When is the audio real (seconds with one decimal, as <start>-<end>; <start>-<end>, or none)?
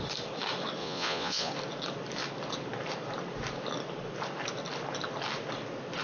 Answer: 0.0-0.8; 1.5-6.0